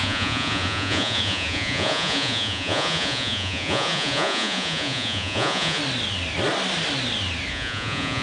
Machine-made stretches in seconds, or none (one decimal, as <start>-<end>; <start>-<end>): 0.0-5.8; 7.5-8.2